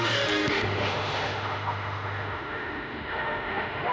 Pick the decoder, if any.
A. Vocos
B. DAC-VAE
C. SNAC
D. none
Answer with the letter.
B